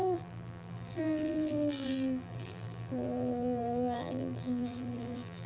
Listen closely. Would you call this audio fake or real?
fake